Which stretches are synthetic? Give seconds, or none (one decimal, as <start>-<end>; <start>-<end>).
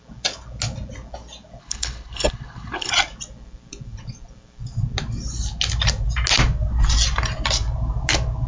1.6-2.9